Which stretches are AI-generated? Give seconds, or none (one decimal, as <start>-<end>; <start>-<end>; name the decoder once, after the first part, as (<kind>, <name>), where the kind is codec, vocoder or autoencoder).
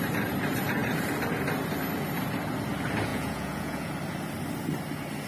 3.1-3.9 (vocoder, Vocos)